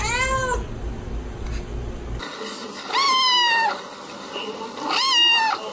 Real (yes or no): yes